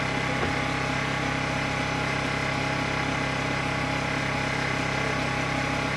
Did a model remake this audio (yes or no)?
no